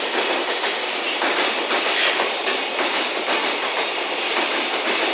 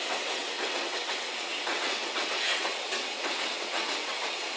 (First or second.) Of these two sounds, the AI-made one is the second